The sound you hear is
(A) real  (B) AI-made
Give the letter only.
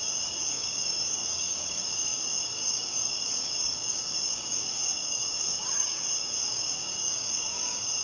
B